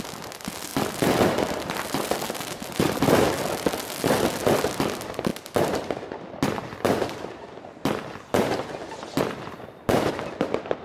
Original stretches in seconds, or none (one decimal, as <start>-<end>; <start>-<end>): 0.0-10.8